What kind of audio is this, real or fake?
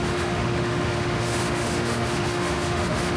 fake